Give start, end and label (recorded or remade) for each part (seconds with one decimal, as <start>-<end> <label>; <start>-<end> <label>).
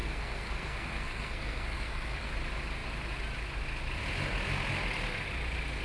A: 0.0-2.3 remade; 2.3-5.8 recorded